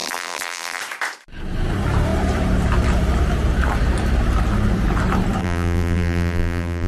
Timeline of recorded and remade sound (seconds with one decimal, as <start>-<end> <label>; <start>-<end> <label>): 0.0-0.8 remade; 0.8-5.4 recorded; 5.4-6.9 remade